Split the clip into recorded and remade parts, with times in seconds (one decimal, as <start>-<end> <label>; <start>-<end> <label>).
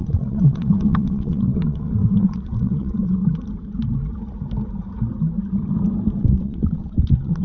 0.0-3.2 remade; 3.2-6.2 recorded; 6.2-7.4 remade